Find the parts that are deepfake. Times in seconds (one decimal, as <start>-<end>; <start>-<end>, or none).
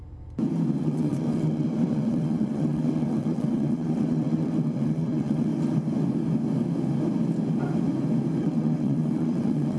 0.8-5.5; 8.4-9.8